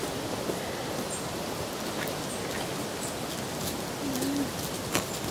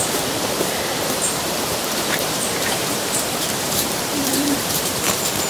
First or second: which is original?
first